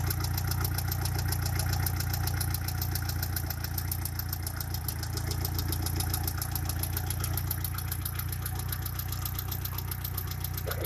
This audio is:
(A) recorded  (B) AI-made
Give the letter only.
A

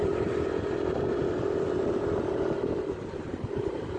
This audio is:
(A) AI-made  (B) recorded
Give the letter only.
A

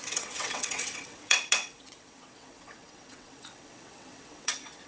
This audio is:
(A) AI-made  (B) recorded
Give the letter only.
A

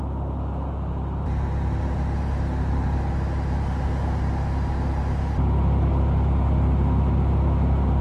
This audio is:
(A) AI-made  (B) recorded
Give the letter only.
B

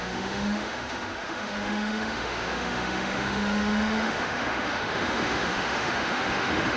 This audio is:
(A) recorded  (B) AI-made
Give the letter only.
B